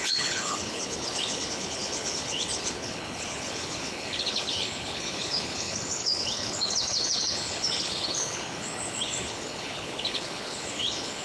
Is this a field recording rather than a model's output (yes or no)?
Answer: no